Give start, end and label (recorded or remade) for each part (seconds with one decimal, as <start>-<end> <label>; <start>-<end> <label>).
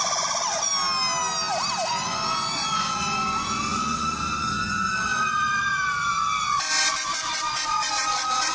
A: 0.0-0.7 remade; 0.7-1.9 recorded; 1.9-8.5 remade